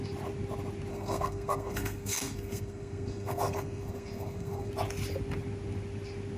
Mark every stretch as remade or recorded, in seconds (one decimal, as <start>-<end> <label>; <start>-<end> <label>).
0.0-0.9 recorded; 0.9-4.7 remade; 4.7-6.4 recorded